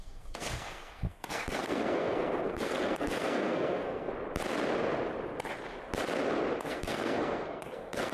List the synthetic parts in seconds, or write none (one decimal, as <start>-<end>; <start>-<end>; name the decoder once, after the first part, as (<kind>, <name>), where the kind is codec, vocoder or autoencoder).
0.0-4.1 (codec, SNAC); 6.6-8.1